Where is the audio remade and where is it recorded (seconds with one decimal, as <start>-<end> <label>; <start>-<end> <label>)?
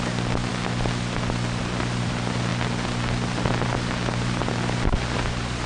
0.0-5.7 recorded